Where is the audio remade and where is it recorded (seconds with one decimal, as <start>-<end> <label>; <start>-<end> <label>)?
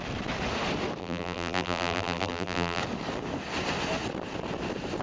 0.0-1.0 recorded; 1.0-2.8 remade; 2.8-5.0 recorded